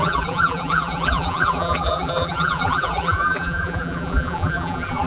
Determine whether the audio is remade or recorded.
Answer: remade